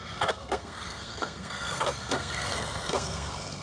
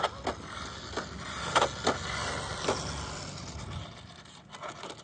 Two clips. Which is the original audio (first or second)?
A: second